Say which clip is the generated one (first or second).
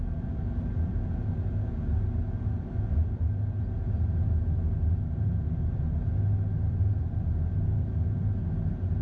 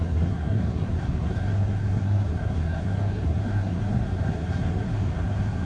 second